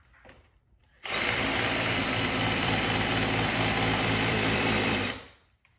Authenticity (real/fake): fake